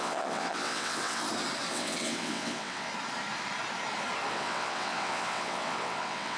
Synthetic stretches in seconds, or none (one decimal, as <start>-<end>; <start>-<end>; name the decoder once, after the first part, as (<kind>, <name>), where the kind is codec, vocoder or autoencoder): 0.0-1.2 (vocoder, WaveNeXt); 1.7-2.9; 4.3-6.4